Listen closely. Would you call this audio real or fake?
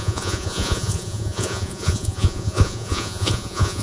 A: fake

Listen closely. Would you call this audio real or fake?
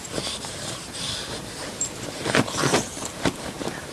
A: fake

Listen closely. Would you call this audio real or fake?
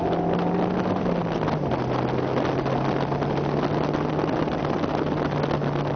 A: real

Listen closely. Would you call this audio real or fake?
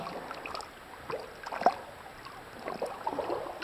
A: real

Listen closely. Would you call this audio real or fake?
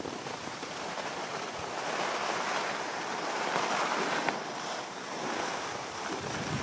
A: real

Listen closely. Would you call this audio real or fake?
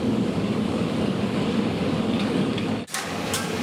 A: fake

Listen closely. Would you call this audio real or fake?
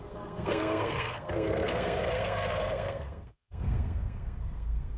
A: fake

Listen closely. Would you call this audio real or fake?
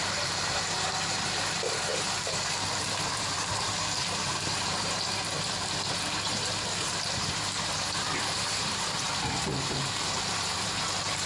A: fake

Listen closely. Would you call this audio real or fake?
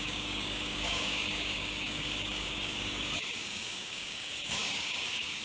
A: fake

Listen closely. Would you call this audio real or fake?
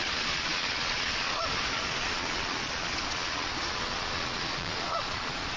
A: fake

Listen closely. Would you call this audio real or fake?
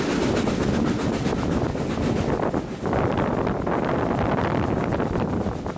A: real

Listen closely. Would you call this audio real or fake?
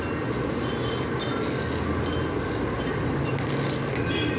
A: real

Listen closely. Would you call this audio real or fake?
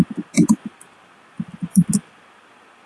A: real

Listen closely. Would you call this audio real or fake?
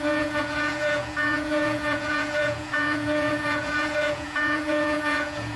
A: fake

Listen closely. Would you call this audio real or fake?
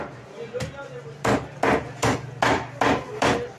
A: real